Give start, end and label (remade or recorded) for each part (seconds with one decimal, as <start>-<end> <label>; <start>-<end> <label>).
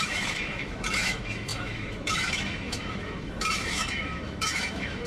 0.0-5.1 remade